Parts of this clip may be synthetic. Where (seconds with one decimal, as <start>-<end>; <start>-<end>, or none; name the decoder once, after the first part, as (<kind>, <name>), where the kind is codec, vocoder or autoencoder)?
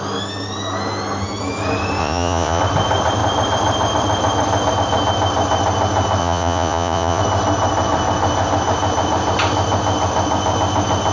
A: 2.0-2.6 (vocoder, Vocos); 6.2-7.2